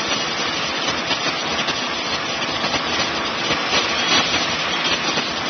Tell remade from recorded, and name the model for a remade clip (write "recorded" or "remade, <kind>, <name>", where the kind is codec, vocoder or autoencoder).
recorded